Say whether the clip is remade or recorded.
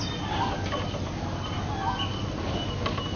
recorded